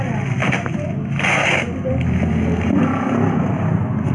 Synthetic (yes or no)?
no